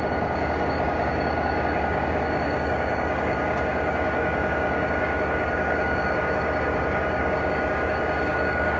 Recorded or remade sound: remade